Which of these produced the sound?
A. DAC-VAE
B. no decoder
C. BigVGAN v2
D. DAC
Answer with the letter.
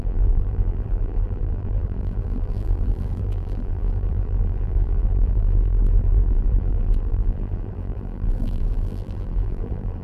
C